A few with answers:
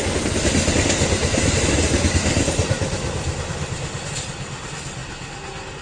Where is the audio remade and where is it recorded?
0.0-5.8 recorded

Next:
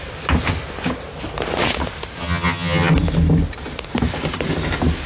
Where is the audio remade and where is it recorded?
0.0-2.2 recorded; 2.2-2.9 remade; 2.9-5.1 recorded

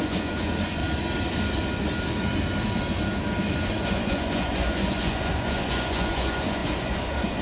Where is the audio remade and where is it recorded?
0.0-0.8 remade; 0.8-3.5 recorded; 3.5-7.4 remade

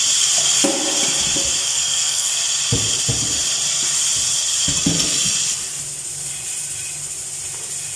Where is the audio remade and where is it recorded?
0.0-1.6 recorded; 1.6-2.3 remade; 2.3-8.0 recorded

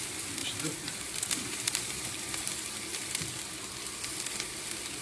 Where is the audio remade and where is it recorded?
0.0-0.4 recorded; 0.4-3.4 remade; 3.4-5.0 recorded